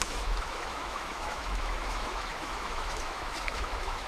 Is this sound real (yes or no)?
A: no